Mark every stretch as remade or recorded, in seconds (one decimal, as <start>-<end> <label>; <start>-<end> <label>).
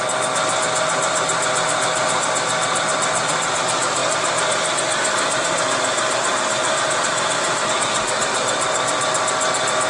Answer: 0.0-9.9 recorded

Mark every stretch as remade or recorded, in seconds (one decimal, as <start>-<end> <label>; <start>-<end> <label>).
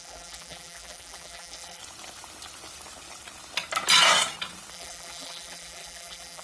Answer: 0.0-1.8 remade; 1.8-4.7 recorded; 4.7-6.4 remade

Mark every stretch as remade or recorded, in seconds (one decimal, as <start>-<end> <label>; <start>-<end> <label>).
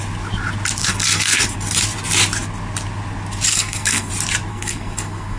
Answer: 0.0-0.8 recorded; 0.8-1.4 remade; 1.4-3.5 recorded; 3.5-4.1 remade; 4.1-4.5 recorded; 4.5-5.4 remade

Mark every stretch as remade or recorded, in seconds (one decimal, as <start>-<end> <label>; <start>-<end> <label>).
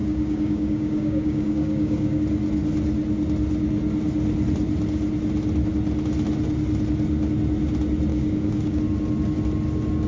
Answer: 0.0-2.2 remade; 2.2-8.1 recorded; 8.1-8.8 remade; 8.8-10.1 recorded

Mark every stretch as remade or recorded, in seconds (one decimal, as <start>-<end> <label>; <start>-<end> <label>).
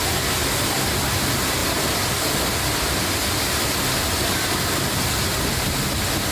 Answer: 0.0-6.3 recorded